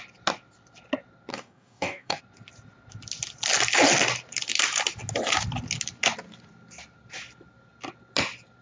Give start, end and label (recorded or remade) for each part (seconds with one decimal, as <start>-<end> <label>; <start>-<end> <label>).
0.0-1.3 recorded; 1.3-2.2 remade; 2.2-8.6 recorded